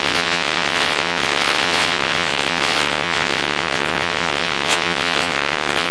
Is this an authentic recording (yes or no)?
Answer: no